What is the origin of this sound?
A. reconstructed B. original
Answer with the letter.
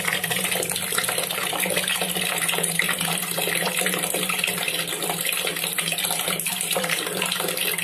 B